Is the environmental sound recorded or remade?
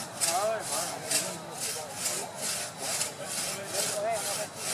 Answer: recorded